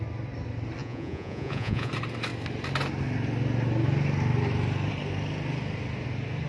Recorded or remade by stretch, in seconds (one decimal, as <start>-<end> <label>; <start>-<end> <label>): 0.0-0.8 recorded; 0.8-1.9 remade; 1.9-6.5 recorded